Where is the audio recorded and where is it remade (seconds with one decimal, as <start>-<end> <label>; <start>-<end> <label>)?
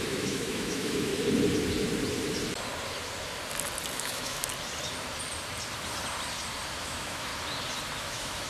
0.0-1.1 remade; 1.1-3.9 recorded; 3.9-4.4 remade; 4.4-6.8 recorded; 6.8-7.3 remade; 7.3-8.0 recorded; 8.0-8.5 remade